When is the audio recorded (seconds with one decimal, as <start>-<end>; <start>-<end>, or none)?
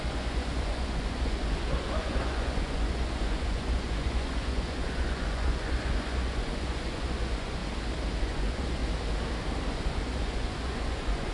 7.6-8.2; 8.8-9.7